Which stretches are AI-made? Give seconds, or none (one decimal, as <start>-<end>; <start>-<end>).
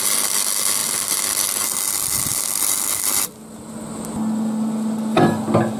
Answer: none